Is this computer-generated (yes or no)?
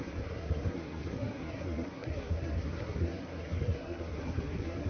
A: yes